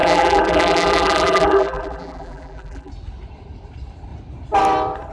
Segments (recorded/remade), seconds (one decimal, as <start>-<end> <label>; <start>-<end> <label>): 0.0-2.9 remade; 2.9-5.1 recorded